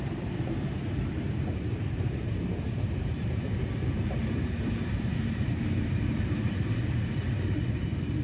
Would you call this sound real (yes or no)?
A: no